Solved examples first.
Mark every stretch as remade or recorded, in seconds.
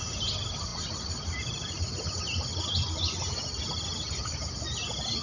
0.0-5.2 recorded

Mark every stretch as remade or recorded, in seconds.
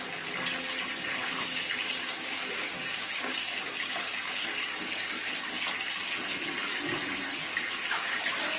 0.0-1.2 recorded; 1.2-5.3 remade; 5.3-8.6 recorded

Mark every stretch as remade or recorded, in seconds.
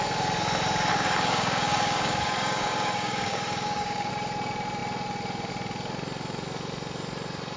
0.0-0.9 recorded; 0.9-4.1 remade; 4.1-7.6 recorded